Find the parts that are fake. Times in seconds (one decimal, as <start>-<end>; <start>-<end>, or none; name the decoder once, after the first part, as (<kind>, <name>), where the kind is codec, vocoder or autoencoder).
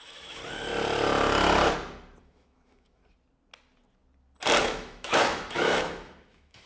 0.0-0.4 (autoencoder, DAC-VAE); 2.2-3.0; 4.6-6.7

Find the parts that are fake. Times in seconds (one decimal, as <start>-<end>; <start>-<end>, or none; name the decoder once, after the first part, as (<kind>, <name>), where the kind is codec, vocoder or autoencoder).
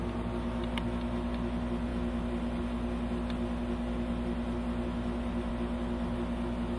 none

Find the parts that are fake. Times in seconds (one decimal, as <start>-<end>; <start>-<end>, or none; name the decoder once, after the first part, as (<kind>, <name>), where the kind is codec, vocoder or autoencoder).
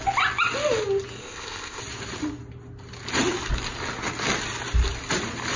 1.2-1.8 (codec, ZipCodec)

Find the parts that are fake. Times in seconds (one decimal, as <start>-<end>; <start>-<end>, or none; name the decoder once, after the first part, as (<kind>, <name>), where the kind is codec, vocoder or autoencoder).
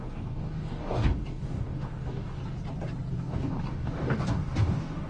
0.0-2.4 (codec, DAC); 3.1-5.1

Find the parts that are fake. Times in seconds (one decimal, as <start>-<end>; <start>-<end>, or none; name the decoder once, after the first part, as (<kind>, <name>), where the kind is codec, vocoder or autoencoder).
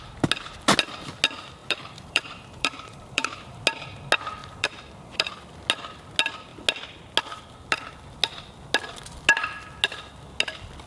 1.6-3.6 (vocoder, BigVGAN v2); 4.4-5.3